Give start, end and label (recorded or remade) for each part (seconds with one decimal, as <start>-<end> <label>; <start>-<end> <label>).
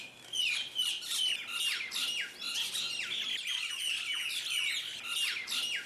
0.0-5.9 recorded